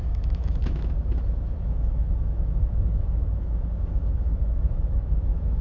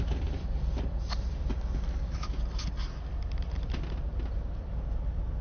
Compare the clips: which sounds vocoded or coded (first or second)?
first